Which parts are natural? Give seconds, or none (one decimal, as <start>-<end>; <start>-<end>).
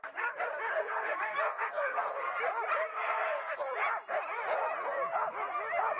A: 0.0-0.8; 2.4-2.9; 3.6-6.0